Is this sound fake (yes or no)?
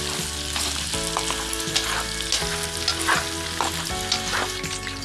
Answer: no